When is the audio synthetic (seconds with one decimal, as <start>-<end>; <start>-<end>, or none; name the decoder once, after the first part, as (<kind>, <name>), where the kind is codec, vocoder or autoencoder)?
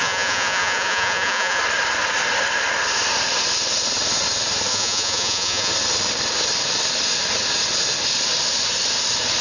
0.0-1.6 (vocoder, Vocos); 4.7-5.7